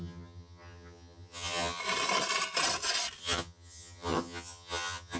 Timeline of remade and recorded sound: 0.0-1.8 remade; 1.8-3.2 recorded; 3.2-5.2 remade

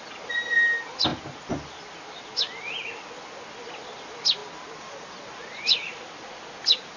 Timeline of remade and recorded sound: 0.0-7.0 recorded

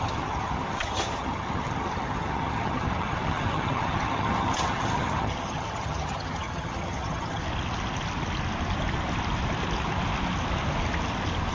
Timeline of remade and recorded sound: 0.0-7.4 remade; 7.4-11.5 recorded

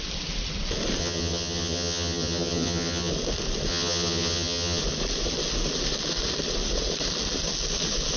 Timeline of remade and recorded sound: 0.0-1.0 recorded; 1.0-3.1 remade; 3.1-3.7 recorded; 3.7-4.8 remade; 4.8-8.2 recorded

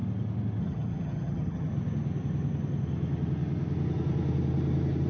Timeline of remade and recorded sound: 0.0-0.6 recorded; 0.6-1.7 remade; 1.7-5.1 recorded

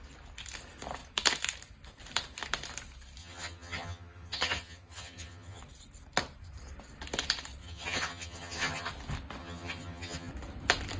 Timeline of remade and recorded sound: 0.0-3.2 recorded; 3.2-5.6 remade; 5.6-7.6 recorded; 7.6-8.9 remade; 8.9-9.4 recorded; 9.4-10.3 remade; 10.3-11.0 recorded

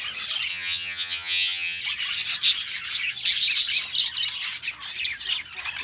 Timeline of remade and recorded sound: 0.0-0.5 recorded; 0.5-1.8 remade; 1.8-5.8 recorded